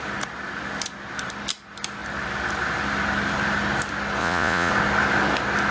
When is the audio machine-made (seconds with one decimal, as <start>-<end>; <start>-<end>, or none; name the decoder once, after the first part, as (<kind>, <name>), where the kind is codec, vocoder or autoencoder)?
4.2-4.7 (vocoder, Vocos)